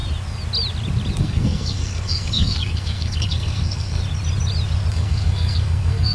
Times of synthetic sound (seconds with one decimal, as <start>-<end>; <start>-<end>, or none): 1.2-4.0; 4.9-6.1